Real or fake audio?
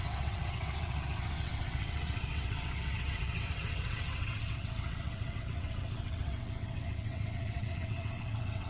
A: fake